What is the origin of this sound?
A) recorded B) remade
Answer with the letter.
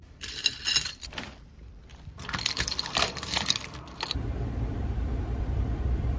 B